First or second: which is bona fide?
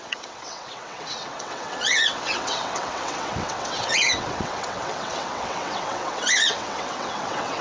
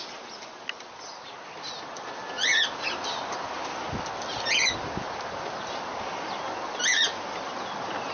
second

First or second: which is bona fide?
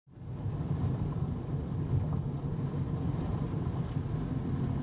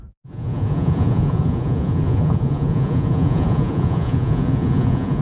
first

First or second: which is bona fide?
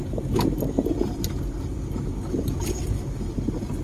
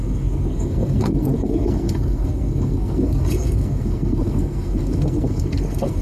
first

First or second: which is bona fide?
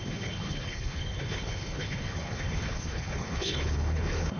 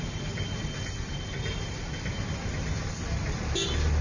second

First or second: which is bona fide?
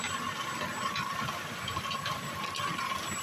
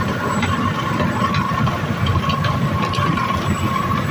first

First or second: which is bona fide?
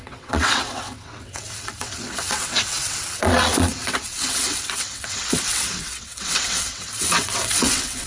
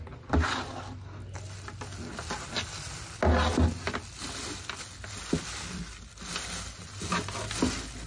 second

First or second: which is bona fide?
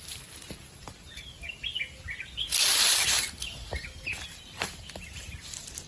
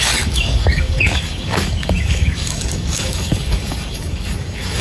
first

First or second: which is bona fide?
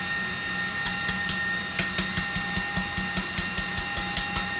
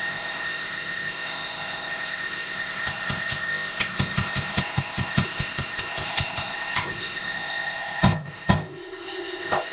first